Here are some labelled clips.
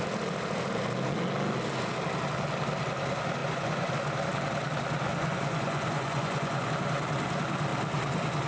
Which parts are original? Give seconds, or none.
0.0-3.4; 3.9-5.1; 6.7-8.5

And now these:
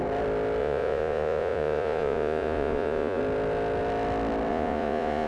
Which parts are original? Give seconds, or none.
0.0-0.6; 3.2-4.5

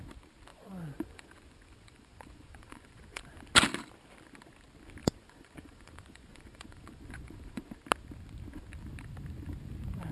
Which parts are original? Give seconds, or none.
0.0-0.5; 3.4-5.0; 7.6-10.1

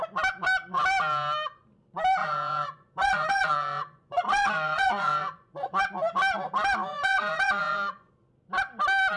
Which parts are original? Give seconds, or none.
0.0-2.2; 5.8-6.9; 8.1-9.2

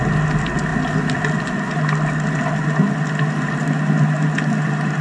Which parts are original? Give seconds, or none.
0.0-5.0

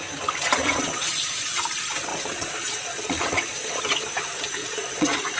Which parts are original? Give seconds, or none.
0.0-0.6; 1.6-2.1; 3.8-4.6

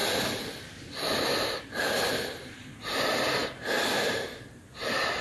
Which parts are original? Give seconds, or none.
0.0-5.2

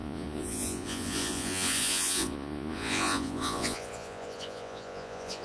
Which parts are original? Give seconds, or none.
none